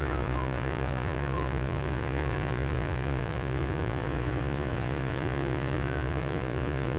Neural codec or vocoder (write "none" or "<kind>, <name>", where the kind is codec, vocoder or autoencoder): vocoder, Vocos